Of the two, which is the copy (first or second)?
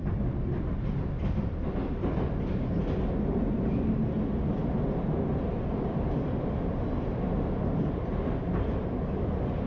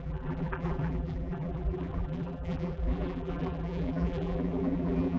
second